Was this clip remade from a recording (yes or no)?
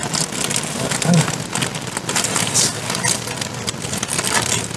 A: no